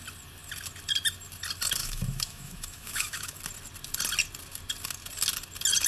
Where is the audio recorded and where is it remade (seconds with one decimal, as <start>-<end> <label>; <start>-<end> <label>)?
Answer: 0.0-1.8 recorded; 1.8-3.4 remade; 3.4-5.9 recorded